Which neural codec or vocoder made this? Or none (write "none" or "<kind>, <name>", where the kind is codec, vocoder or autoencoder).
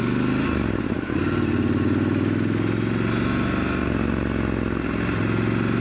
none